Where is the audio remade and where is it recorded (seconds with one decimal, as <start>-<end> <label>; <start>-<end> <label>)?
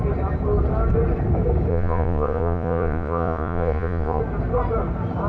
0.0-1.7 recorded; 1.7-4.2 remade; 4.2-5.3 recorded